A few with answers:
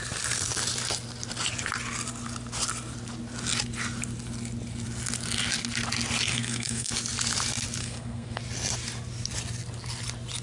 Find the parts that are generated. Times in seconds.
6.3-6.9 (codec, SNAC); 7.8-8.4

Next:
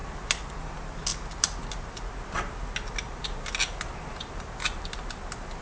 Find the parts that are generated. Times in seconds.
none

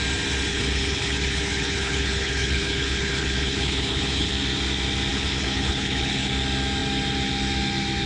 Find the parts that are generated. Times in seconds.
0.5-4.3 (codec, HILCodec); 5.1-6.3

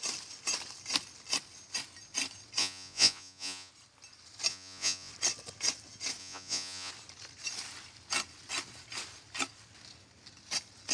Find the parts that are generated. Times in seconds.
2.6-3.7 (vocoder, Vocos); 4.5-5.1; 6.2-6.9

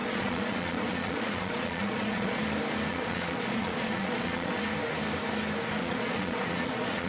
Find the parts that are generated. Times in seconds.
0.0-2.4 (vocoder, Vocos); 2.9-4.6; 5.8-7.1

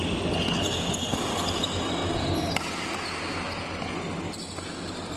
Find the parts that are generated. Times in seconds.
none

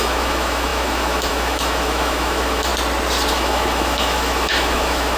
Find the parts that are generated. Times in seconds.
0.0-2.7 (autoencoder, DAC-VAE); 3.3-5.2

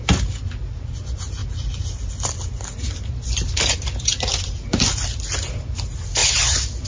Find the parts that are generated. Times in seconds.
none